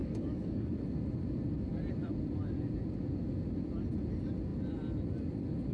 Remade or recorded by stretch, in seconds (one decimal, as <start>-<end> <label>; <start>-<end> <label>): 0.0-0.7 remade; 0.7-5.7 recorded